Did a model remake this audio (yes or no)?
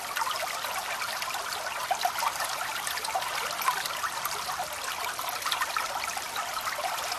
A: no